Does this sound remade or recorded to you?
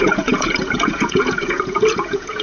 remade